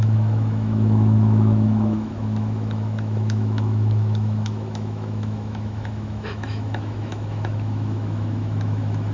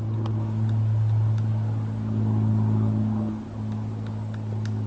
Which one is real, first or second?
second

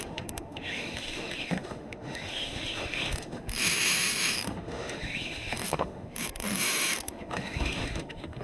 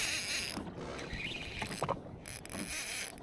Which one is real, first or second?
second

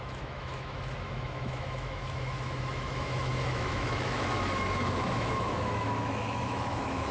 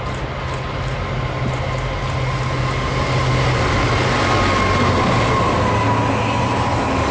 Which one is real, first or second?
second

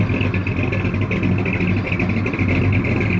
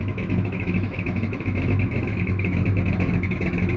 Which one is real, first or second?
first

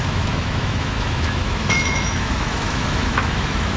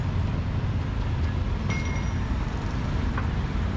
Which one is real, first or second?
second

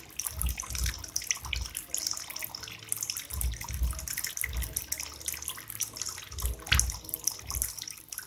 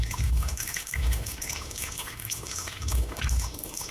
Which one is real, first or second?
first